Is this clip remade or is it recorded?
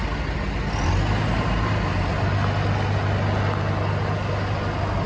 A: recorded